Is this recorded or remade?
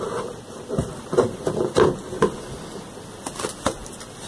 remade